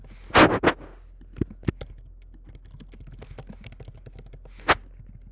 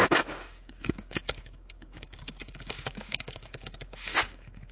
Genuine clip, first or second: first